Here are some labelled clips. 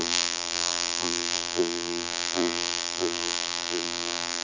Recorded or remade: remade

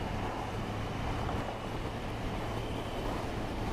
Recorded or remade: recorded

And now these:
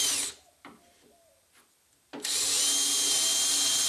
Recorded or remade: recorded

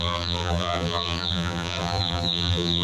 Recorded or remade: remade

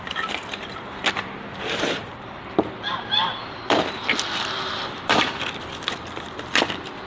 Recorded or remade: remade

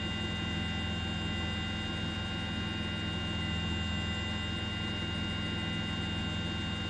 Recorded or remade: recorded